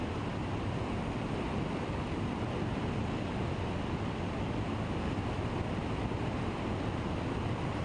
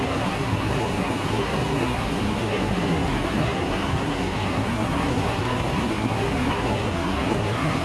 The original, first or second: first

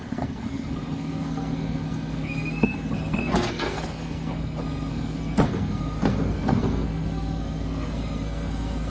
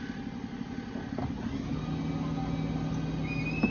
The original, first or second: second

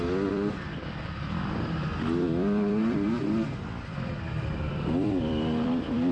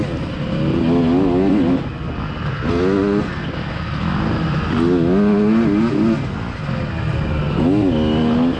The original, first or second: second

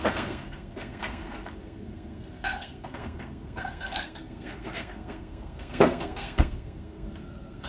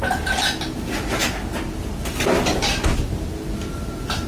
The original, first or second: second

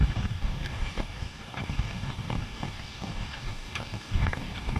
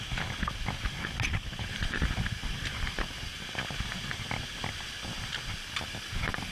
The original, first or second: second